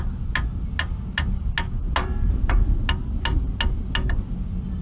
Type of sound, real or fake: real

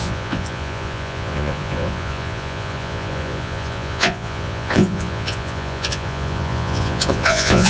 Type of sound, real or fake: fake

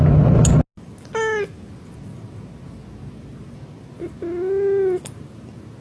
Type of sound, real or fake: real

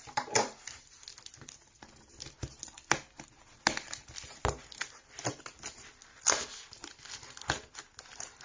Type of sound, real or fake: real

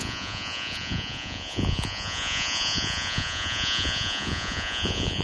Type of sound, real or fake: fake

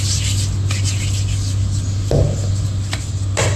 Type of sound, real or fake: real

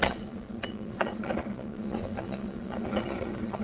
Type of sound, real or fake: fake